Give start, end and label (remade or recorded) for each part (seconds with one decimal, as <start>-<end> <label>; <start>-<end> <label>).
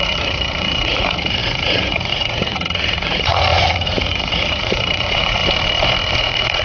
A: 0.0-5.4 remade; 5.4-6.1 recorded; 6.1-6.6 remade